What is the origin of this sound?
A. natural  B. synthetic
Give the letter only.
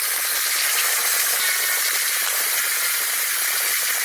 A